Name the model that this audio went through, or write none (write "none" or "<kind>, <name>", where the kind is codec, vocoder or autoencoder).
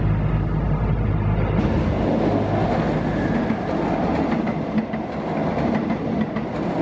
none